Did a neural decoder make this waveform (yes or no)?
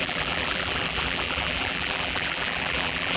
yes